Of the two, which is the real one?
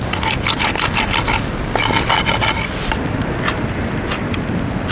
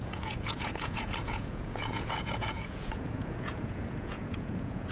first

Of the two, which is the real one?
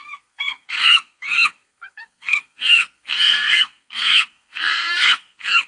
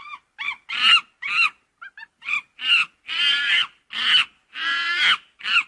second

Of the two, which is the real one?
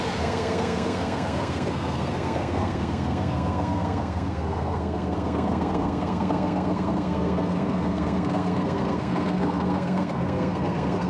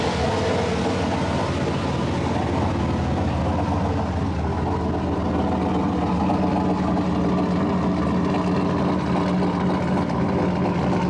second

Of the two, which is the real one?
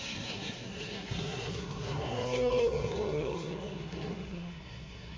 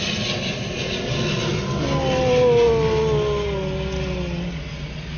second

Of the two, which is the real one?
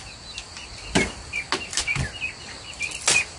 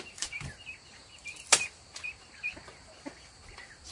first